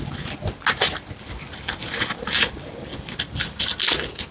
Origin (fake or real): real